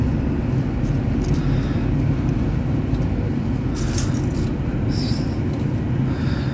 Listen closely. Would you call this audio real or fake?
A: real